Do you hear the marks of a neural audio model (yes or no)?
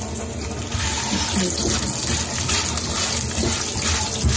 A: no